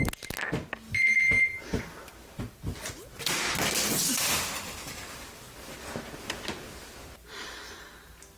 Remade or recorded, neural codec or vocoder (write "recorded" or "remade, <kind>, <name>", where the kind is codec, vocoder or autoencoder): recorded